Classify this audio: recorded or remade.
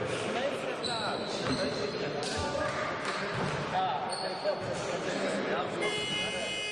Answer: recorded